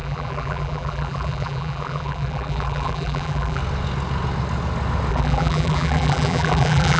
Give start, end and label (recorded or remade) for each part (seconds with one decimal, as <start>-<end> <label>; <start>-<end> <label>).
0.0-3.6 remade; 3.6-5.1 recorded; 5.1-7.0 remade

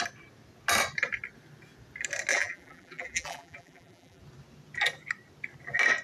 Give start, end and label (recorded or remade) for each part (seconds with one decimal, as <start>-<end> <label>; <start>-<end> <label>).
0.0-2.3 recorded; 2.3-4.2 remade; 4.2-6.0 recorded

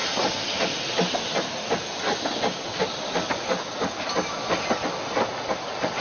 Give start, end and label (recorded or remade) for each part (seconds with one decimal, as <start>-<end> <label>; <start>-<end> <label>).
0.0-6.0 recorded

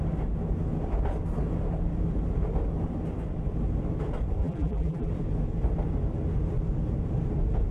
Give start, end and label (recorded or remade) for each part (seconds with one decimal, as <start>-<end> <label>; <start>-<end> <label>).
0.0-4.4 recorded; 4.4-5.1 remade; 5.1-7.7 recorded

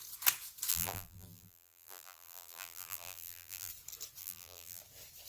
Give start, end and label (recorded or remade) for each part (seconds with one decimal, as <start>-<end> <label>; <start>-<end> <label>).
0.0-0.7 recorded; 0.7-3.7 remade; 3.7-4.2 recorded; 4.2-4.8 remade; 4.8-5.3 recorded

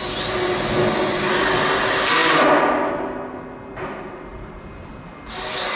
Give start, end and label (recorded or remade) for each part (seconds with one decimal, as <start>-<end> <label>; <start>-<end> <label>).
0.0-4.3 recorded; 4.3-4.9 remade; 4.9-5.8 recorded

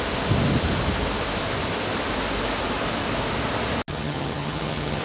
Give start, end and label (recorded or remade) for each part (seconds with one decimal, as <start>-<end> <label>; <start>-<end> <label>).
0.0-3.9 recorded; 3.9-5.0 remade

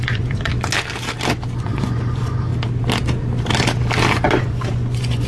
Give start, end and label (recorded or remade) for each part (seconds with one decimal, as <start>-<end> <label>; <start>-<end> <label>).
0.0-0.5 remade; 0.5-1.6 recorded; 1.6-2.5 remade; 2.5-4.4 recorded; 4.4-5.3 remade